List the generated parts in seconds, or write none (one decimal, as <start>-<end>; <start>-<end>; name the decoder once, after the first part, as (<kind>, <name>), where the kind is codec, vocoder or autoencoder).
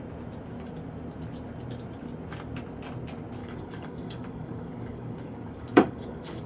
3.4-6.5 (codec, DAC)